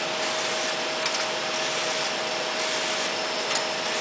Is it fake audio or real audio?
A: real